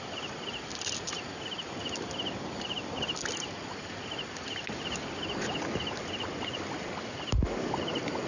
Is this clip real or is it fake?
real